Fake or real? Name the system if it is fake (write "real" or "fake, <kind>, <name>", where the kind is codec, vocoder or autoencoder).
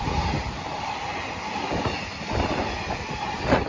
real